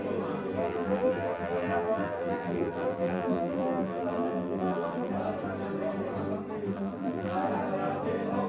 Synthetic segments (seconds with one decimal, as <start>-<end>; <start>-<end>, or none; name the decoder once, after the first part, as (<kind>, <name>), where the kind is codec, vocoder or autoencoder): 0.6-5.1 (vocoder, BigVGAN v2); 6.7-7.5

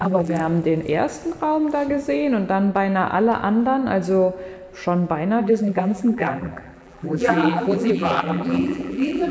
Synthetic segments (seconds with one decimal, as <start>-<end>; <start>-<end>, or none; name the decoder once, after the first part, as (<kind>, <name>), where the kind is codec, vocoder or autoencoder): 0.0-0.4 (vocoder, BigVGAN v2); 5.4-9.3